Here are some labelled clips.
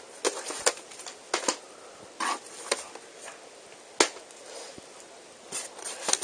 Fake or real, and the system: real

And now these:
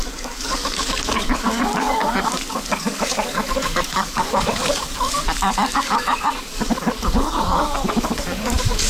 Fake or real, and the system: fake, codec, DAC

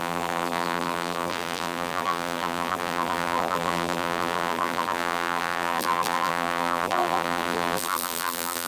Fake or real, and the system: fake, vocoder, BigVGAN v2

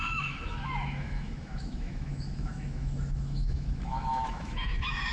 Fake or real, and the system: fake, autoencoder, DAC-VAE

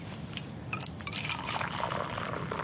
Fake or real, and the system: real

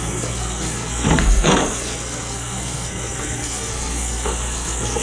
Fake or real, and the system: fake, codec, SNAC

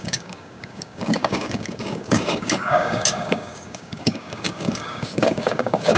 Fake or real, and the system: fake, codec, DAC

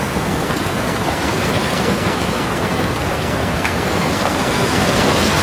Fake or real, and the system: fake, codec, SNAC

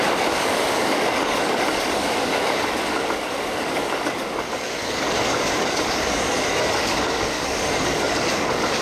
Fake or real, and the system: fake, codec, DAC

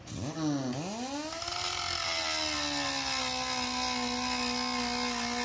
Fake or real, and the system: real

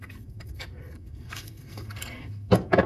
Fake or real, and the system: fake, codec, SNAC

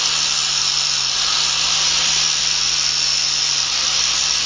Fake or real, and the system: real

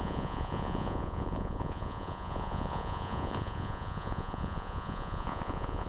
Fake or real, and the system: fake, vocoder, Vocos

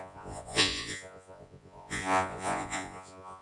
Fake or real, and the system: fake, vocoder, Vocos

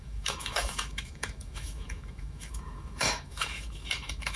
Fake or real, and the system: fake, autoencoder, DAC-VAE